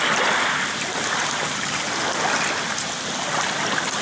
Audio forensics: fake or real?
real